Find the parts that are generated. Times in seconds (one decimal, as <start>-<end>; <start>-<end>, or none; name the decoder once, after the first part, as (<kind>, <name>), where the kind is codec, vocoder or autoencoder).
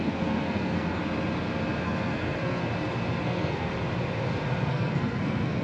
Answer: 0.0-1.0 (codec, SNAC); 1.8-2.6; 3.2-3.7; 4.7-5.6